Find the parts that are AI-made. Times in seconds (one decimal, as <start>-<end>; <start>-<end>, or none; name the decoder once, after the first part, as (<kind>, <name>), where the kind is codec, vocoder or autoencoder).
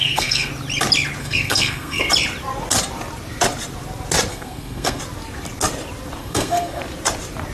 0.0-0.5 (codec, SNAC); 1.2-2.1; 4.3-5.0; 6.2-6.8